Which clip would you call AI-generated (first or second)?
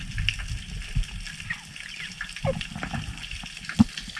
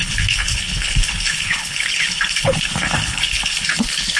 second